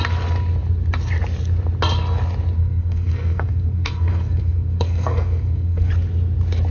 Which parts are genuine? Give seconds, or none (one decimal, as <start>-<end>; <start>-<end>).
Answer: 0.0-2.6; 5.9-6.7